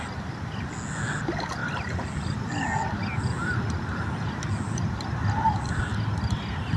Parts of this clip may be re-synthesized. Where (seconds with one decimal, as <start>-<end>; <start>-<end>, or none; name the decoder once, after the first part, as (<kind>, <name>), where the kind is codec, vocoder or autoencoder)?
none